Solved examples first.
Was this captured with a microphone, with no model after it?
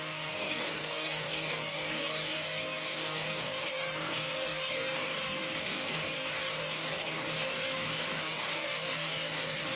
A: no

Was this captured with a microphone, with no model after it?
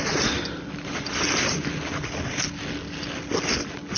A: yes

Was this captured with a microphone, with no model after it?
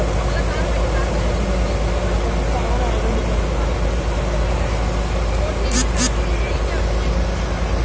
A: yes